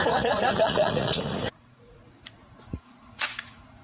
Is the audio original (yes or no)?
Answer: no